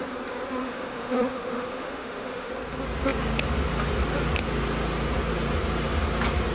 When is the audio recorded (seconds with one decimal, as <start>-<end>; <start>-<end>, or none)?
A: 0.0-0.6; 2.5-6.5